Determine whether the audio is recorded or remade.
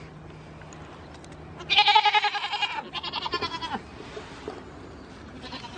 recorded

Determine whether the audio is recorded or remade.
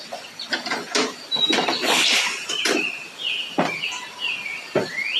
recorded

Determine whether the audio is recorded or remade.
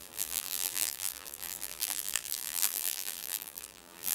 remade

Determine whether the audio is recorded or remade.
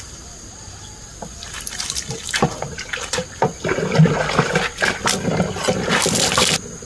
recorded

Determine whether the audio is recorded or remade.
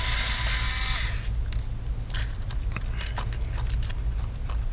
recorded